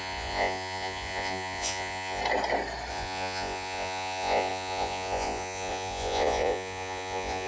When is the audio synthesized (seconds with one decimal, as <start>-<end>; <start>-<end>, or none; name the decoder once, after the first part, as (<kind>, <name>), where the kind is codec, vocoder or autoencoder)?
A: 0.0-2.2 (vocoder, Vocos); 2.9-7.5